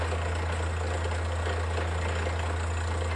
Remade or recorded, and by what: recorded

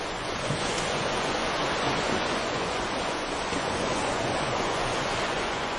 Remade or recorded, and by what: remade, vocoder, Vocos